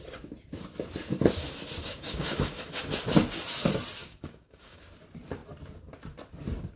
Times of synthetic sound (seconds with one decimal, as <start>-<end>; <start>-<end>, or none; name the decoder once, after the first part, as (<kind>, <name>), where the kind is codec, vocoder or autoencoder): 1.8-2.6 (codec, DAC); 4.0-4.8